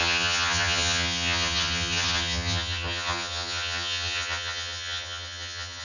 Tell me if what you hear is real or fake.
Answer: fake